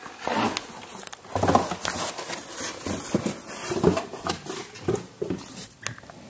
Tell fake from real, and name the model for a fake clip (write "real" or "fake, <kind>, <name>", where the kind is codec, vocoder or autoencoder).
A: real